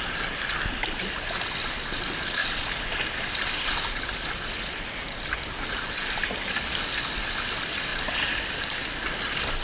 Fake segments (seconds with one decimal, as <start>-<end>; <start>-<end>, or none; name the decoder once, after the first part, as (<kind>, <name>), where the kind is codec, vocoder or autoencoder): none